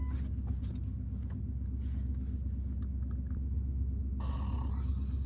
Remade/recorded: recorded